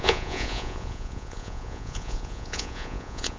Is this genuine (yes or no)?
no